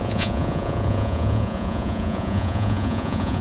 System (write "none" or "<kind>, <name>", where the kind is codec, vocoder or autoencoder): vocoder, Vocos